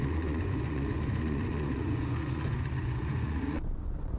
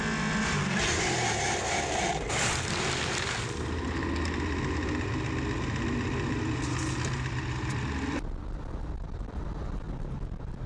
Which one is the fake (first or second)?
first